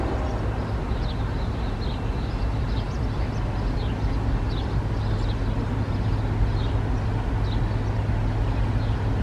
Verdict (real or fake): real